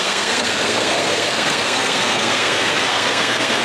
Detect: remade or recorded remade